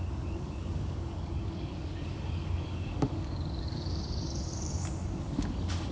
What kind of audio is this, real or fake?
fake